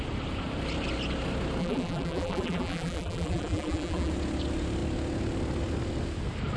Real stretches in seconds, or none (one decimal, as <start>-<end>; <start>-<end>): 0.0-1.6; 4.1-6.6